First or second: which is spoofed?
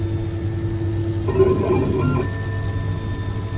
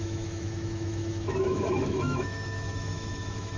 second